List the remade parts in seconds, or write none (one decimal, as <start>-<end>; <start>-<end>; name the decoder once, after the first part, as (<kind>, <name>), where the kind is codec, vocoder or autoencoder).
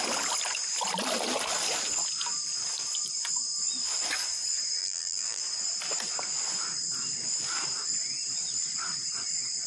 4.8-5.4 (vocoder, BigVGAN v2)